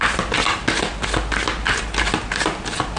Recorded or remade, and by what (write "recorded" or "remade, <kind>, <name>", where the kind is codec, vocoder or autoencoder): recorded